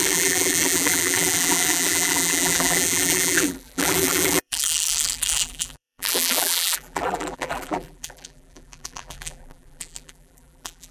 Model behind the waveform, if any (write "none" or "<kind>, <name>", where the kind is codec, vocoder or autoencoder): vocoder, BigVGAN v2